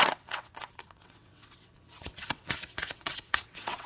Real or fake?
fake